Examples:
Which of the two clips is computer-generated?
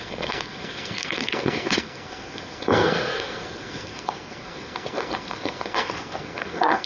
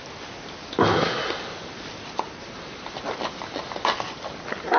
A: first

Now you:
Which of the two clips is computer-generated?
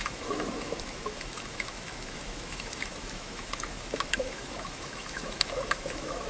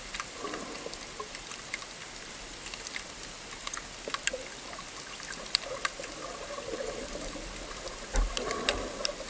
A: first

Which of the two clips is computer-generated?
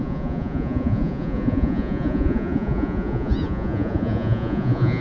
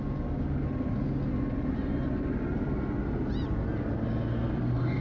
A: first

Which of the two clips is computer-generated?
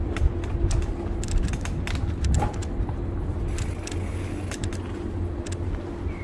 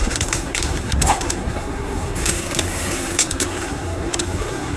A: second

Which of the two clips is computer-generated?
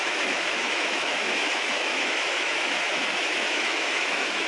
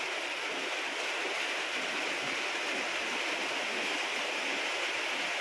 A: first